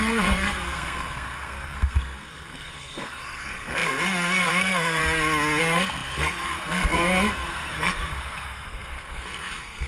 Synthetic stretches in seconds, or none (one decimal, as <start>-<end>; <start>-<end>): 0.0-5.0; 5.6-9.9